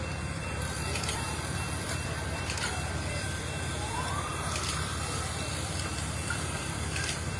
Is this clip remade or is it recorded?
remade